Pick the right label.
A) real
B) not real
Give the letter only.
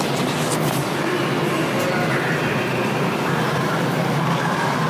A